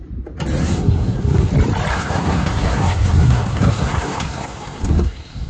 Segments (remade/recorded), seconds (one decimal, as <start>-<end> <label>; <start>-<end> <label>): 0.0-0.6 recorded; 0.6-1.5 remade; 1.5-1.9 recorded; 1.9-5.5 remade